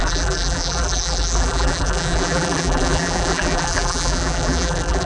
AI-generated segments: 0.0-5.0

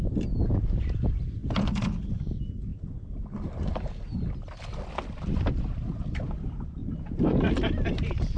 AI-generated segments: 6.8-8.4